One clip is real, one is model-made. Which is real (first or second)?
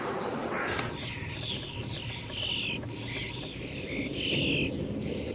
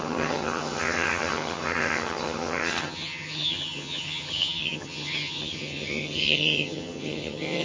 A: first